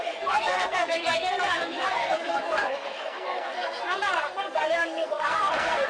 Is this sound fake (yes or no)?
yes